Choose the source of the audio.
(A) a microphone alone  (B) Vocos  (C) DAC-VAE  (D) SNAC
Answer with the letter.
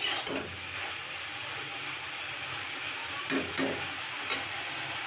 A